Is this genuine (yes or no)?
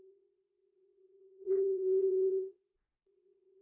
no